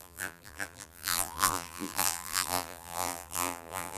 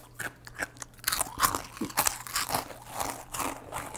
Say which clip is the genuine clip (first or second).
second